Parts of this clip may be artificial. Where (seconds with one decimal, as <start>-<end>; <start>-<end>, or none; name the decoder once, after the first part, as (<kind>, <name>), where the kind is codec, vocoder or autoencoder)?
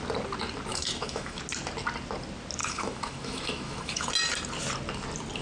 0.7-1.4 (autoencoder, DAC-VAE); 2.6-4.1